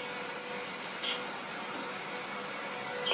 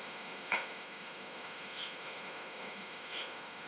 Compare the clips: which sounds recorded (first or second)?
first